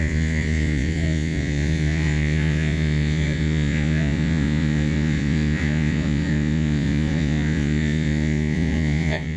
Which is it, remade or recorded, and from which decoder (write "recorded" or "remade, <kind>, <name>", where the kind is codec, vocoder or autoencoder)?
remade, vocoder, Vocos